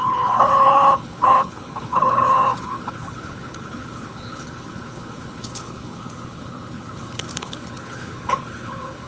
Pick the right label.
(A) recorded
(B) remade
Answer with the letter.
B